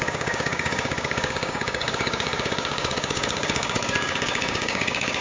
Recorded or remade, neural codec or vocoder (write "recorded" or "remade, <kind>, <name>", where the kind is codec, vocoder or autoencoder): remade, codec, DAC